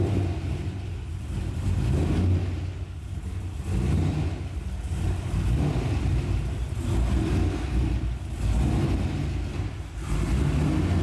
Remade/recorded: recorded